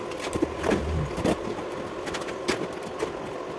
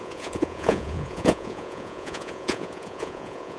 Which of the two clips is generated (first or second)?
second